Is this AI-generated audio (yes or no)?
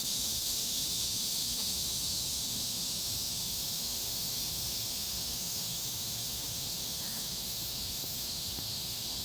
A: yes